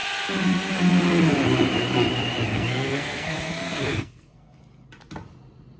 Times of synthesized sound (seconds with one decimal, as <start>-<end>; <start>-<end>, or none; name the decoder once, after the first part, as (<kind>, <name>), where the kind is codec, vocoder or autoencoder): 2.5-4.6 (codec, SNAC)